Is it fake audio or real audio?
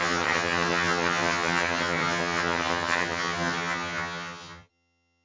fake